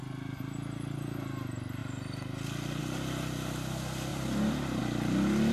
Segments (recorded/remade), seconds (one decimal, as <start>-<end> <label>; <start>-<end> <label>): 0.0-4.1 recorded; 4.1-4.8 remade; 4.8-5.5 recorded